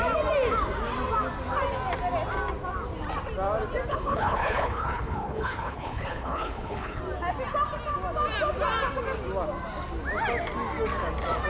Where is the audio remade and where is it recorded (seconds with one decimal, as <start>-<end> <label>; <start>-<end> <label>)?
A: 0.0-3.9 recorded; 3.9-7.0 remade; 7.0-11.5 recorded